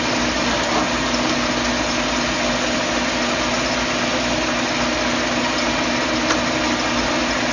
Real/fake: real